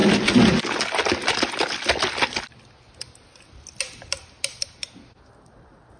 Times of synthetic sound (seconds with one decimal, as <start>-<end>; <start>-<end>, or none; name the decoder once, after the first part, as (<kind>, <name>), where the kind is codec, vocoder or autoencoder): none